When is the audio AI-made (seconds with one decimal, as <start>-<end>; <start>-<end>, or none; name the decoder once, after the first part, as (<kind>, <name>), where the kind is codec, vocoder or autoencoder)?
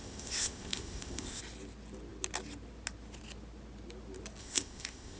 0.0-1.4 (codec, ZipCodec); 4.4-5.2